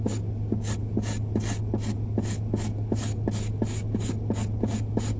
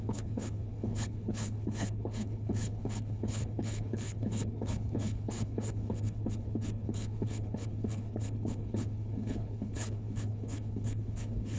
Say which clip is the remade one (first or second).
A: second